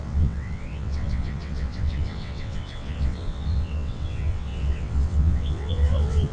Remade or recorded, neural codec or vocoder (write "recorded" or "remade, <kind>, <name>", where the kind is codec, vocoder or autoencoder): remade, vocoder, WaveNeXt